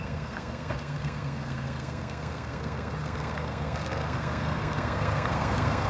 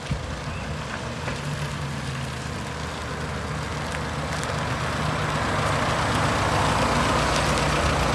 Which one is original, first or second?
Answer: second